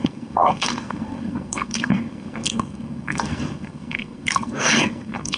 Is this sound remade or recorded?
remade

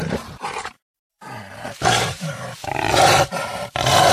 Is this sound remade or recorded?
remade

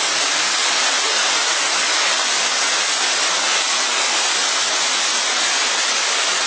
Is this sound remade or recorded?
recorded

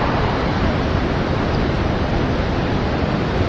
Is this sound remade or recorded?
recorded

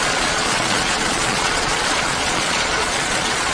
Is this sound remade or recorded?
remade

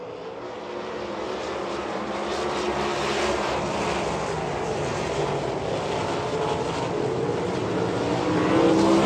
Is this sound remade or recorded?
recorded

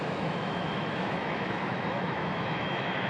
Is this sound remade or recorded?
remade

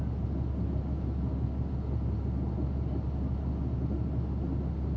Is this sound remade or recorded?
recorded